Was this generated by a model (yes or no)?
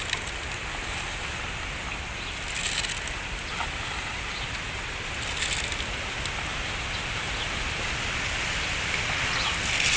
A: no